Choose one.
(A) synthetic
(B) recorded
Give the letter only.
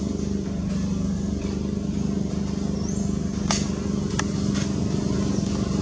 B